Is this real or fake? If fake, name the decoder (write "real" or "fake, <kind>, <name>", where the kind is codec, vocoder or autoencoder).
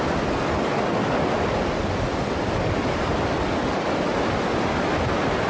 real